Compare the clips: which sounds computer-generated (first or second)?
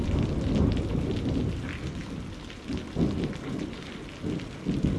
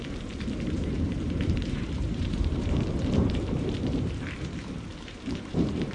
second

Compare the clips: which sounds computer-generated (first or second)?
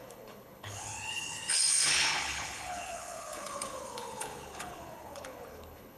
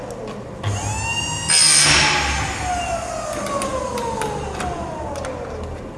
first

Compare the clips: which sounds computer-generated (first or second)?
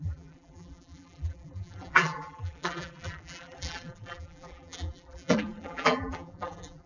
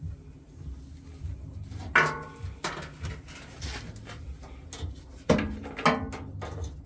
first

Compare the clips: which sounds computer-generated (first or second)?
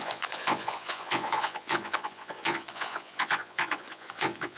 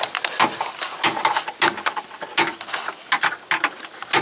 first